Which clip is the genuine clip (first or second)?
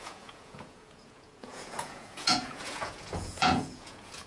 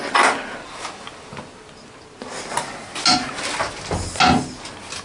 second